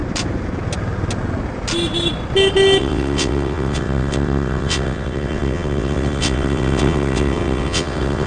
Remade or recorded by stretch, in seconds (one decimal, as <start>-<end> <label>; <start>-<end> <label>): 0.0-2.8 recorded; 2.8-8.3 remade